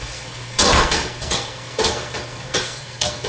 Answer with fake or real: fake